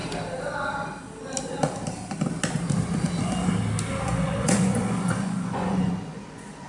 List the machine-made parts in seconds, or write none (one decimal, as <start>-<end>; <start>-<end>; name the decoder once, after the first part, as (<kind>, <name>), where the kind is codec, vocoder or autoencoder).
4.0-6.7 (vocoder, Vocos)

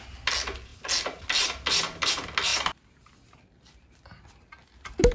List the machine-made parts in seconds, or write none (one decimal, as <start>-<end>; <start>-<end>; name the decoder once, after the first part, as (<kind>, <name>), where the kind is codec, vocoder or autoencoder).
none

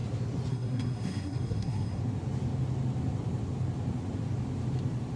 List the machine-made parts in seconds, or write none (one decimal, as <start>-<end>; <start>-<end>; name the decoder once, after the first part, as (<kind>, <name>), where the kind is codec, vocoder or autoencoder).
0.5-2.0 (codec, SNAC)